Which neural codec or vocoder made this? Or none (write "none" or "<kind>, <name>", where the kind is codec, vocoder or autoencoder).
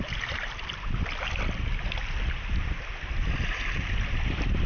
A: none